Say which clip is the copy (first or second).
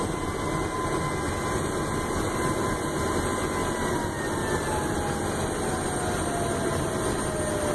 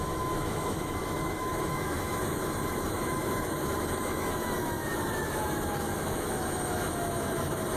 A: second